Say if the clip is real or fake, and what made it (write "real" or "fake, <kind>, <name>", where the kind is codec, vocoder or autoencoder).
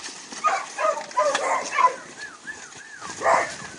real